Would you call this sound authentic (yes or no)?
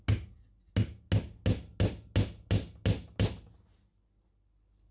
yes